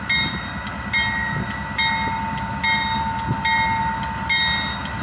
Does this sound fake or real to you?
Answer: real